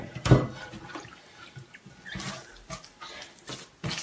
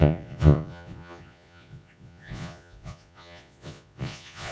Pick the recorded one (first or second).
first